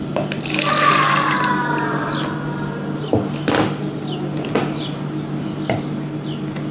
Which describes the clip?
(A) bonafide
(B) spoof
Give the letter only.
A